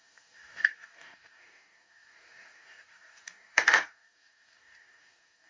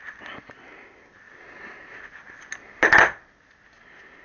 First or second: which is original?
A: second